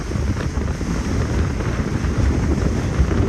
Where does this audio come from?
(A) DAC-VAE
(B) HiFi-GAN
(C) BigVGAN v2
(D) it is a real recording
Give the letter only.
D